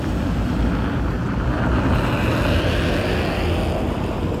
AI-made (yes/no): no